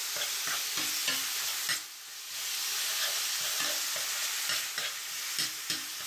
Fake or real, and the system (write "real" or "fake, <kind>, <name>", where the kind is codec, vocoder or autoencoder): real